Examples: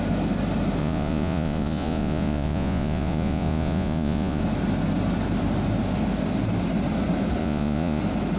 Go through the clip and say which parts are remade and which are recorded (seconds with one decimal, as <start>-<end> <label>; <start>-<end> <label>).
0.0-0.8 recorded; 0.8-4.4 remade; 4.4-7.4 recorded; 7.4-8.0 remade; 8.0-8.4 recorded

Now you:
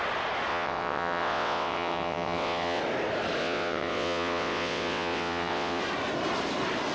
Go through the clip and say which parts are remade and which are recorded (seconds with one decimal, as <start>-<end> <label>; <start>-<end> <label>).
0.0-0.5 recorded; 0.5-2.8 remade; 2.8-3.4 recorded; 3.4-5.8 remade; 5.8-6.9 recorded

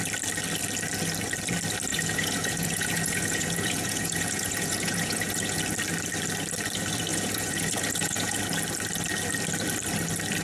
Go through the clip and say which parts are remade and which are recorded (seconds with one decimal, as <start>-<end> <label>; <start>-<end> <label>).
0.0-1.9 recorded; 1.9-5.6 remade; 5.6-7.1 recorded; 7.1-8.4 remade; 8.4-10.4 recorded

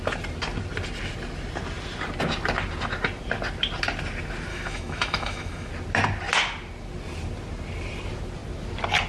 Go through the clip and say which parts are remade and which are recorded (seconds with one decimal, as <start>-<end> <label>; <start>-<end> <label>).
0.0-4.5 recorded; 4.5-5.7 remade; 5.7-9.1 recorded